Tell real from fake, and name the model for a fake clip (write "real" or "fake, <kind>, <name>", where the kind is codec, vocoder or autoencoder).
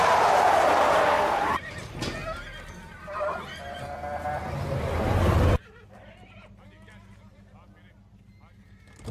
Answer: real